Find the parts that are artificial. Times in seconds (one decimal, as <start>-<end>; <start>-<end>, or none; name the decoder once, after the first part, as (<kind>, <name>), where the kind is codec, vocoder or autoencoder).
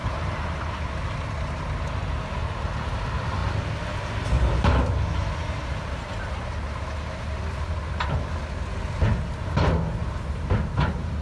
0.0-0.6 (vocoder, BigVGAN v2); 10.0-11.2